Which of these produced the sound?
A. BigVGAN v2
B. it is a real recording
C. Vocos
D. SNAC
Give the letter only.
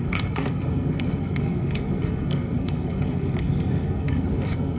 D